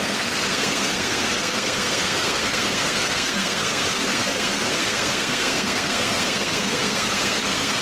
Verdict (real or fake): fake